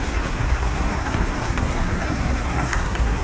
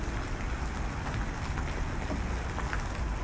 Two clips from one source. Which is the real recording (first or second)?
second